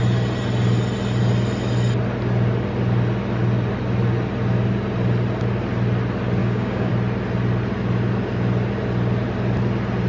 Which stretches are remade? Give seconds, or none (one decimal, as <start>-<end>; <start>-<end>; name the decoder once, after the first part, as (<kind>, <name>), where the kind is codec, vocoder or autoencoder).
6.4-6.9 (codec, DAC)